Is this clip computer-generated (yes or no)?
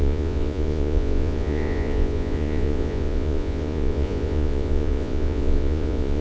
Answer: yes